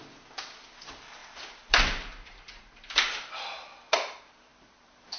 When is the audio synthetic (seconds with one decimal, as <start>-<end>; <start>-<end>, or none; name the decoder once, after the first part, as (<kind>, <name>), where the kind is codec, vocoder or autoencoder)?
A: 1.2-3.4 (vocoder, BigVGAN v2); 4.5-5.2